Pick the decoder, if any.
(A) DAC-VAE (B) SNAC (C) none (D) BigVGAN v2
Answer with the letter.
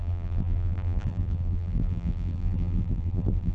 D